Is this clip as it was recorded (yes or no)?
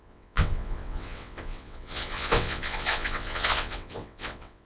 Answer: no